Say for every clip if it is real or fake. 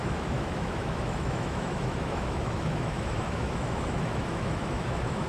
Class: fake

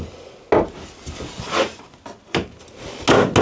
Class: real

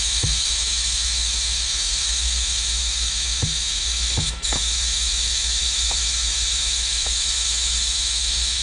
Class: fake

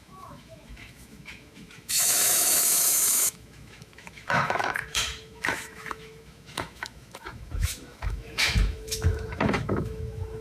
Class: fake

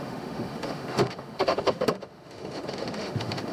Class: fake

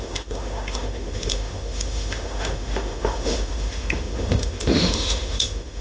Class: fake